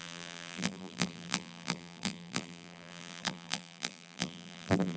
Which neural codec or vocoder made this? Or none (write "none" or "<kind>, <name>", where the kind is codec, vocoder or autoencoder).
vocoder, BigVGAN v2